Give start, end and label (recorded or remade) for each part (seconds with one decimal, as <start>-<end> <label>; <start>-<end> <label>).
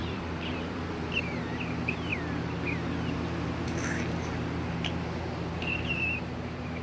0.0-1.1 remade; 1.1-6.8 recorded